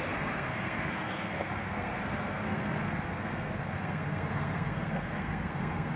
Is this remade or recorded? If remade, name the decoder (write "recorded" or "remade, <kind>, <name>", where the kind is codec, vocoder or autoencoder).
remade, codec, SNAC